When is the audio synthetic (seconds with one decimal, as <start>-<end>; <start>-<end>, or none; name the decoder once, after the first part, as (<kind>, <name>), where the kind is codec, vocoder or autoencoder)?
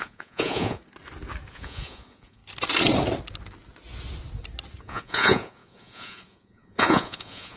0.0-0.8 (vocoder, Vocos); 1.5-2.4; 4.8-7.6